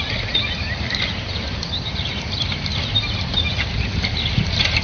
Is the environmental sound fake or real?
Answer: real